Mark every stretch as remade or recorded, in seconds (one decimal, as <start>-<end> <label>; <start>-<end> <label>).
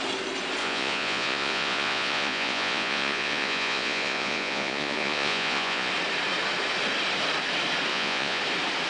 0.0-0.6 recorded; 0.6-5.9 remade; 5.9-7.9 recorded; 7.9-8.4 remade; 8.4-8.9 recorded